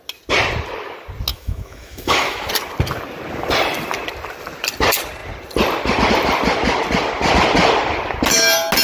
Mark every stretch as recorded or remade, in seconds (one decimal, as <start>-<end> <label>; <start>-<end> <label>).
0.0-1.3 recorded; 1.3-2.5 remade; 2.5-8.8 recorded